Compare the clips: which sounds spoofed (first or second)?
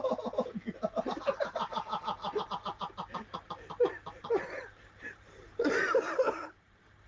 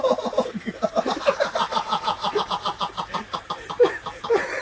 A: second